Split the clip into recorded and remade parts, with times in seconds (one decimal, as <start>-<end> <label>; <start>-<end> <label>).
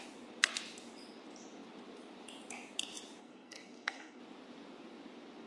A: 0.0-3.2 recorded; 3.2-4.2 remade; 4.2-5.5 recorded